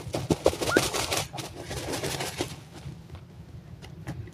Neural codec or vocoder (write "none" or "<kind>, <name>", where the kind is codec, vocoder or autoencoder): none